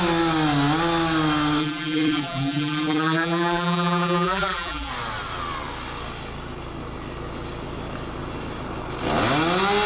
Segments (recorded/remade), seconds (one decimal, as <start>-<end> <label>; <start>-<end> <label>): 0.0-1.6 recorded; 1.6-4.9 remade; 4.9-9.9 recorded